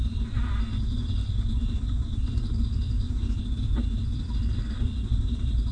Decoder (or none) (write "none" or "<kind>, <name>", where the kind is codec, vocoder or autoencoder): none